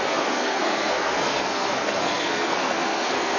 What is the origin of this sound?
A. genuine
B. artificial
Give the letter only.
B